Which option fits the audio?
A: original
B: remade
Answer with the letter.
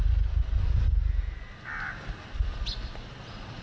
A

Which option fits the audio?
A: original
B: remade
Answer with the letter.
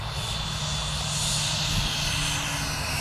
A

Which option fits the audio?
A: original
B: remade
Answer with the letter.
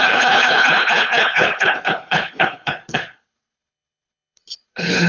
B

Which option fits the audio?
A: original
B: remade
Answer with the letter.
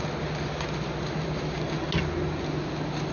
A